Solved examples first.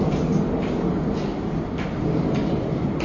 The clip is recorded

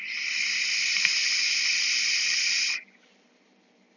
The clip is remade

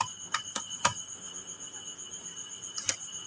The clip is recorded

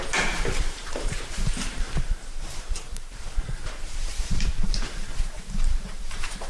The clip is remade